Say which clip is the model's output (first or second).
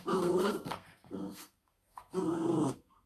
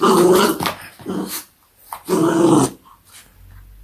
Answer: first